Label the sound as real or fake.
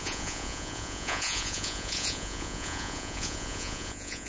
fake